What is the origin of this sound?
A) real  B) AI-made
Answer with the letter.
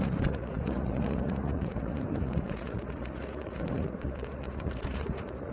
B